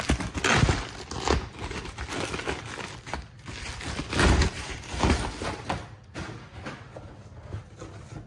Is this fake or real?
real